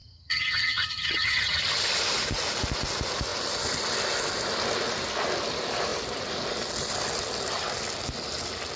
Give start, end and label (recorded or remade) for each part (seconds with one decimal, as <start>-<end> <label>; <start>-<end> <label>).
0.0-1.6 remade; 1.6-8.8 recorded